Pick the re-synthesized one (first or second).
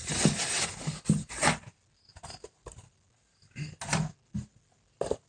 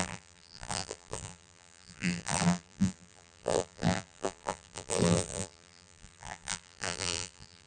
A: second